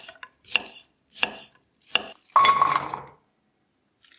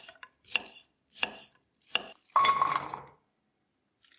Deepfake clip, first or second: second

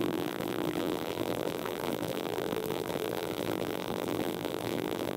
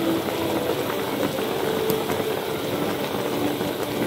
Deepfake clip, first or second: first